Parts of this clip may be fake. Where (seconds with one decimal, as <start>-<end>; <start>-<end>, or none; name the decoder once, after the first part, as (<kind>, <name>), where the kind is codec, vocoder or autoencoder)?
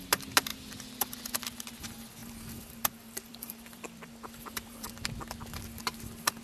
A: 2.2-4.9 (vocoder, BigVGAN v2)